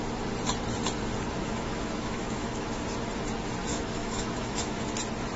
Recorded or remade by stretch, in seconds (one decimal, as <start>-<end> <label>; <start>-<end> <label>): 0.0-1.4 recorded; 1.4-2.8 remade; 2.8-3.7 recorded; 3.7-4.9 remade; 4.9-5.4 recorded